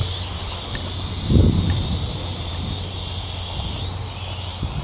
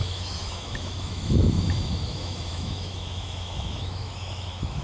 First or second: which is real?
first